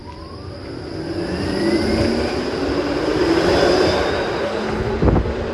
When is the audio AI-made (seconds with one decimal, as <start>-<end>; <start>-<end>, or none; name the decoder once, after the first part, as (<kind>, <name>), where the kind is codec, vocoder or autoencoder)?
4.4-4.9 (codec, HILCodec)